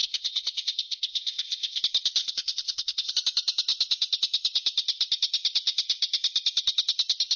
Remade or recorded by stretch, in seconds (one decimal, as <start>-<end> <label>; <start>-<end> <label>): 0.0-1.8 remade; 1.8-2.2 recorded; 2.2-3.1 remade; 3.1-7.4 recorded